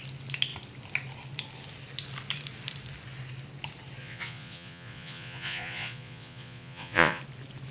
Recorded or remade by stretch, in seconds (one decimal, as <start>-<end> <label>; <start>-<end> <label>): 0.0-4.0 recorded; 4.0-7.2 remade; 7.2-7.7 recorded